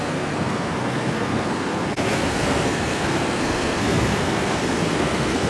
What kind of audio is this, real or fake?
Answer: fake